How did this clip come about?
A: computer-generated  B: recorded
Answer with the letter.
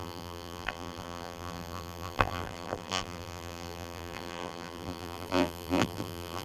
A